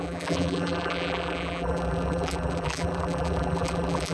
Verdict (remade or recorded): remade